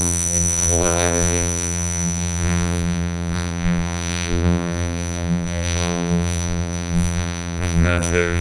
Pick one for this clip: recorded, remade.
remade